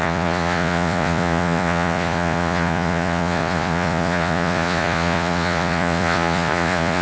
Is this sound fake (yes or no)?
yes